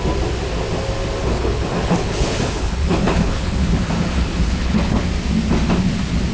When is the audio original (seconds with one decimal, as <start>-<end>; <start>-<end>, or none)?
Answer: 0.0-1.2; 5.0-6.3